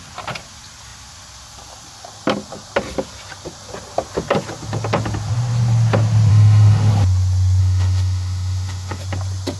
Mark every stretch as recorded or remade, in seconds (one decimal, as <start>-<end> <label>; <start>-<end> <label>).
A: 0.0-6.3 recorded; 6.3-6.9 remade; 6.9-7.6 recorded; 7.6-9.0 remade; 9.0-9.6 recorded